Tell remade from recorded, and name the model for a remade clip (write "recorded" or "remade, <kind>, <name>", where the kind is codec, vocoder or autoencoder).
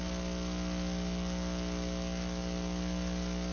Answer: recorded